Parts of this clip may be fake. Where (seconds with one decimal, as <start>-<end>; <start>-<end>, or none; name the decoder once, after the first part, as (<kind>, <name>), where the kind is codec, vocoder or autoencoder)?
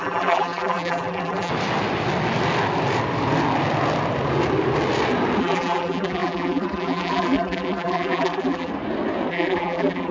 0.0-1.5 (vocoder, BigVGAN v2); 5.4-8.7; 9.3-10.1